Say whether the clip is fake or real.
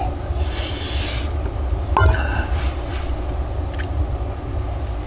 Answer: real